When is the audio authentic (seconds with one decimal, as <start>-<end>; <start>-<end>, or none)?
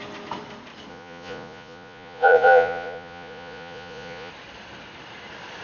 0.0-0.9; 4.3-5.6